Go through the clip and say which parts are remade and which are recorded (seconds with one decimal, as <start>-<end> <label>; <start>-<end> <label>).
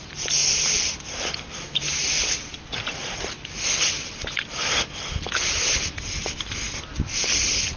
0.0-7.8 recorded